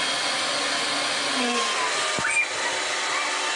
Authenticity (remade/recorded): recorded